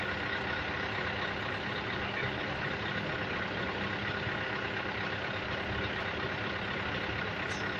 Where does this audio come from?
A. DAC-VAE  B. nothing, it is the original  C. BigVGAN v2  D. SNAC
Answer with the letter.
B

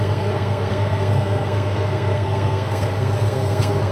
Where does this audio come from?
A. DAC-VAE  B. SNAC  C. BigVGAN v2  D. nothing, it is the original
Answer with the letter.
B